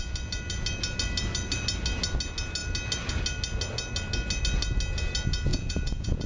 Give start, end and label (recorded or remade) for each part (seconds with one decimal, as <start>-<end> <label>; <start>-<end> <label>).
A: 0.0-5.5 recorded; 5.5-6.3 remade